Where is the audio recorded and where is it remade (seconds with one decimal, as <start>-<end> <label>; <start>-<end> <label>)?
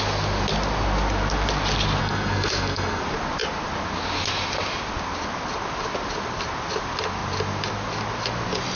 0.0-2.0 recorded; 2.0-3.0 remade; 3.0-8.8 recorded